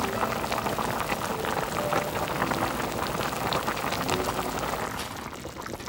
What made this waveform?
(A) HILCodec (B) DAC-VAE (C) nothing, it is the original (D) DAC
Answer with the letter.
C